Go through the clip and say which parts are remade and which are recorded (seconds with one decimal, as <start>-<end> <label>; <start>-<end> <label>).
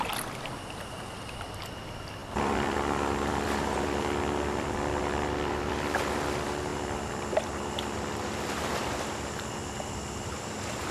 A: 0.0-2.2 recorded; 2.2-5.6 remade; 5.6-6.7 recorded; 6.7-8.8 remade; 8.8-10.9 recorded